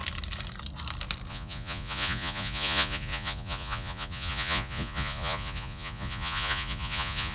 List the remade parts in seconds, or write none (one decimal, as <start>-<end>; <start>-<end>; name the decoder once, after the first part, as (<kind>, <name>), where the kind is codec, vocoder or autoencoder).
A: 1.3-7.3 (vocoder, Vocos)

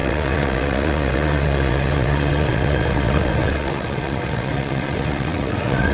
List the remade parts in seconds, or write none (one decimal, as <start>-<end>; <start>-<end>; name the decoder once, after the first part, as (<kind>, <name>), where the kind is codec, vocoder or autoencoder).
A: 0.0-5.9 (vocoder, WaveNeXt)

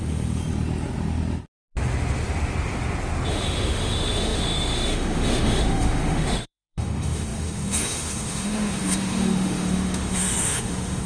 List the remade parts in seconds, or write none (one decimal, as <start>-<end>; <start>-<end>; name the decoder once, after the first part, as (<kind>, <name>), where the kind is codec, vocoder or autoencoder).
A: 0.0-0.4 (autoencoder, DAC-VAE); 3.3-11.1

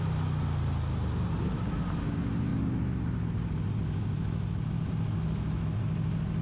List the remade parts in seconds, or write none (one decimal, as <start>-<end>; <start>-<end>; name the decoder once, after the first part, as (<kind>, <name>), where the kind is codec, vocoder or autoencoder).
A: none